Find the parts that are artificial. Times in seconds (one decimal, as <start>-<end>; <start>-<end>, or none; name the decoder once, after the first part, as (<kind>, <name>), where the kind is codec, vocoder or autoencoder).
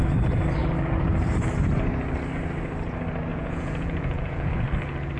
3.3-4.5 (vocoder, Vocos)